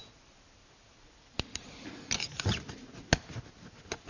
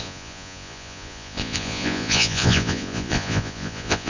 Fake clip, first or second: second